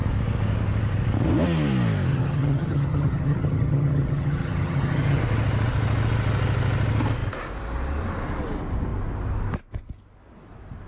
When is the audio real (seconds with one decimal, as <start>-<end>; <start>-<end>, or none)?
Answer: 0.0-2.1; 5.2-10.9